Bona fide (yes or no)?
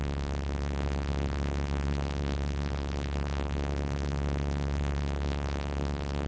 no